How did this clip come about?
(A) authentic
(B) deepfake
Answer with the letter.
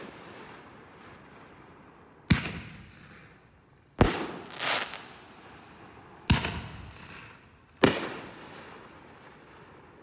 A